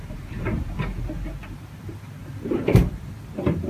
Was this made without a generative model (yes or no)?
no